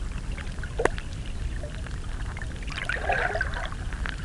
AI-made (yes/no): no